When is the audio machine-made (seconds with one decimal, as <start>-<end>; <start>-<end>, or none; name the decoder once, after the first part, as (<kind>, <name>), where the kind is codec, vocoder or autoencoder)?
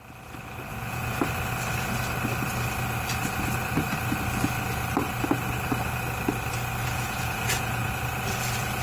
0.7-1.2 (vocoder, Vocos); 6.8-7.9